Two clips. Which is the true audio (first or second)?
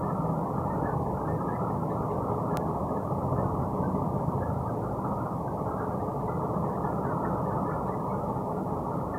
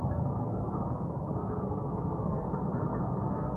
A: first